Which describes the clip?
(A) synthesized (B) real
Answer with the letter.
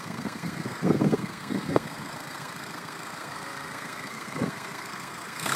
A